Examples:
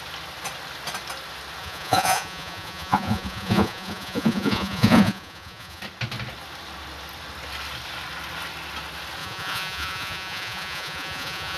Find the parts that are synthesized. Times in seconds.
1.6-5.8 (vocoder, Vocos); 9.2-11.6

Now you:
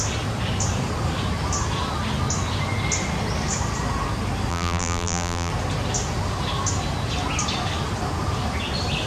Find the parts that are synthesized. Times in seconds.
4.5-5.5 (vocoder, BigVGAN v2)

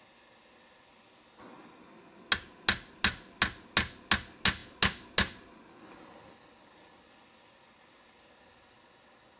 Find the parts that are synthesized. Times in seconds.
none